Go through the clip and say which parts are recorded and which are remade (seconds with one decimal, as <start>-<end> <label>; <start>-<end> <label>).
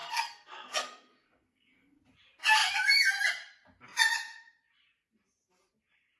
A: 0.0-2.0 remade; 2.0-6.2 recorded